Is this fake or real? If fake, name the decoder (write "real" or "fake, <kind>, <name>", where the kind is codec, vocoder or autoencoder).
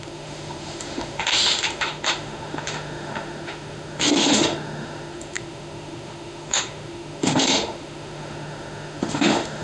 fake, autoencoder, DAC-VAE